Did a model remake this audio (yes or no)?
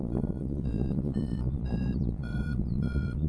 yes